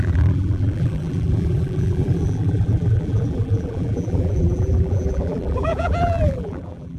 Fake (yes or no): yes